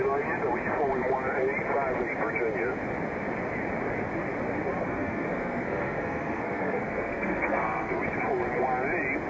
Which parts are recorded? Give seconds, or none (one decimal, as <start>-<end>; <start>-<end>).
0.0-4.8; 8.0-9.3